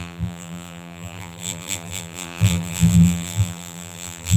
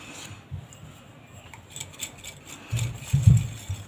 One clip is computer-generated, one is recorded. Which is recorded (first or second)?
second